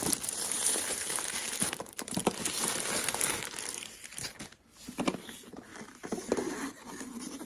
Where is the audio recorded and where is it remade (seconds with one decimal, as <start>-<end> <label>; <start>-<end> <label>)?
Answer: 0.0-2.2 remade; 2.2-4.7 recorded; 4.7-5.7 remade; 5.7-6.2 recorded; 6.2-7.5 remade